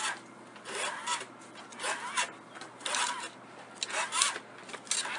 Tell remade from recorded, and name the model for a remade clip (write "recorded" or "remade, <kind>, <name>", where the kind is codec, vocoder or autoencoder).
recorded